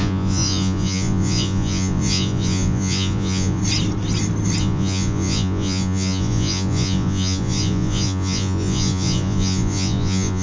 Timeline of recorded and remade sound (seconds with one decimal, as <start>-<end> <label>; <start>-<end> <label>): 0.0-3.6 remade; 3.6-4.6 recorded; 4.6-10.4 remade